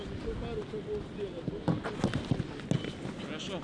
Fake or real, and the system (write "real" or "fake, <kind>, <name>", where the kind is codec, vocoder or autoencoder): real